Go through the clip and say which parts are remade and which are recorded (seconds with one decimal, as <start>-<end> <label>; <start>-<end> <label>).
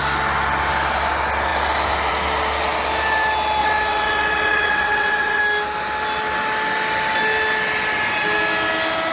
0.0-3.6 recorded; 3.6-5.4 remade; 5.4-9.1 recorded